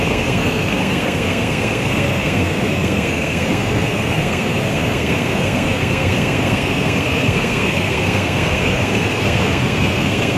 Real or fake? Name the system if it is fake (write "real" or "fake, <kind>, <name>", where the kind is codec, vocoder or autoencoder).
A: fake, codec, SNAC